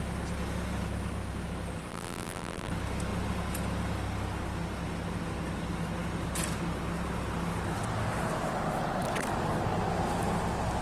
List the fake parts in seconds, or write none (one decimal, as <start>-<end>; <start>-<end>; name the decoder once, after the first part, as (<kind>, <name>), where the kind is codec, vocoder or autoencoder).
1.9-2.7 (vocoder, BigVGAN v2)